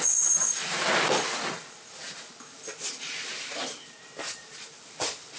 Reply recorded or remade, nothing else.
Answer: recorded